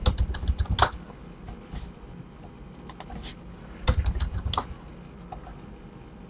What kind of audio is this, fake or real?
real